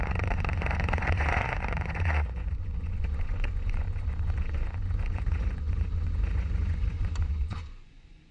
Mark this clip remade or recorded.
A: remade